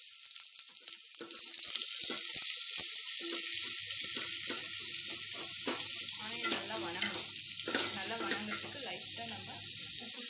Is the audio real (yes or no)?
yes